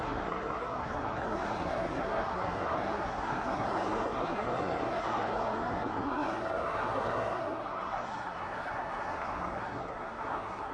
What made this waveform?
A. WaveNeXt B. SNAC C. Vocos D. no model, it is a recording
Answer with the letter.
B